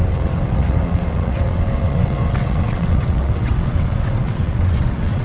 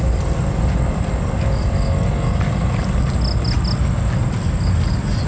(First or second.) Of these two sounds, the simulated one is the first